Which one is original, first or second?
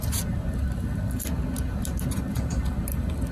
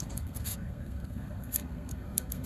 first